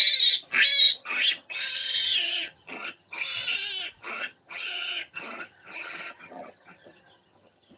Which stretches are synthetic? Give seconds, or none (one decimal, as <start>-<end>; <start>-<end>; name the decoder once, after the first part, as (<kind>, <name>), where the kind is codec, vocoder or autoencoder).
0.9-3.2 (vocoder, HiFi-GAN); 4.0-7.8